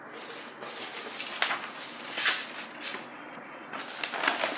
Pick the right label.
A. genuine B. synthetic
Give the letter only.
A